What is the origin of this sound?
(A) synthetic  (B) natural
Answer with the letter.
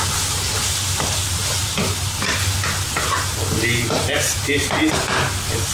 B